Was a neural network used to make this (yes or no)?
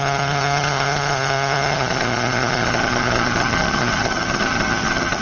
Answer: yes